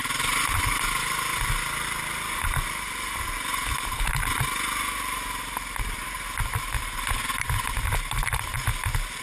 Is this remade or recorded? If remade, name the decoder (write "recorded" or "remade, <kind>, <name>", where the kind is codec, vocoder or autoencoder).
recorded